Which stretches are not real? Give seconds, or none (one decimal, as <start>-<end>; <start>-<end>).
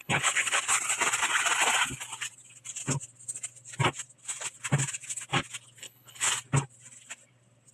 0.0-0.6; 5.8-6.3